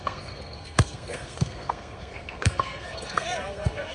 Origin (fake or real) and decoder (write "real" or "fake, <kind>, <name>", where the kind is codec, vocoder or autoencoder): fake, codec, SNAC